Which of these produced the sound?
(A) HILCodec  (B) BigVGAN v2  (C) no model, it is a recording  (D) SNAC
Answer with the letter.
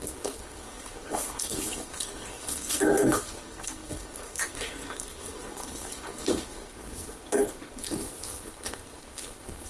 D